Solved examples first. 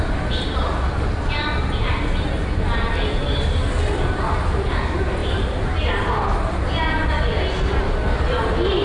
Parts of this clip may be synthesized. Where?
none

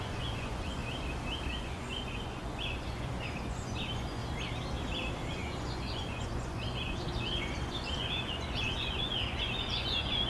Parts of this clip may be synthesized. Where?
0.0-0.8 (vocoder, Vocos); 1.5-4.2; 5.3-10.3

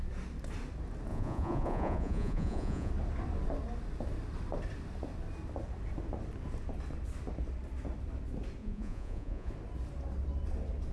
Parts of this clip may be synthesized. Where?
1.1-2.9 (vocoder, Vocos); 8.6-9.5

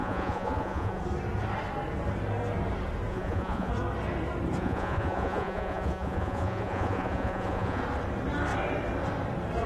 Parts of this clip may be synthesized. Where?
0.0-1.0 (vocoder, Vocos); 3.1-3.7; 4.6-7.8